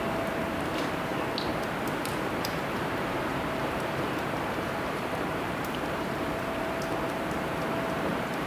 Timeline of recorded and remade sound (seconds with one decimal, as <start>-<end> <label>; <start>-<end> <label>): 0.0-1.1 remade; 1.1-1.9 recorded; 1.9-8.5 remade